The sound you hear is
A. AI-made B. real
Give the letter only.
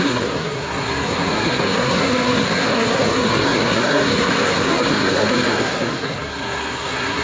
A